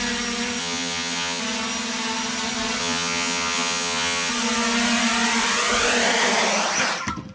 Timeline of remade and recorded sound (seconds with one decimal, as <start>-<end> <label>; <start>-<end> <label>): 0.0-0.6 recorded; 0.6-1.4 remade; 1.4-2.8 recorded; 2.8-4.3 remade; 4.3-7.3 recorded